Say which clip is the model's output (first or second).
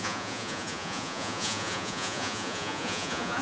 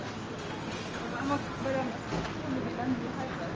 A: first